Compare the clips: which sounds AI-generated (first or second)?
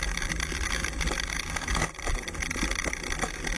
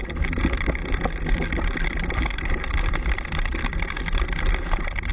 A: second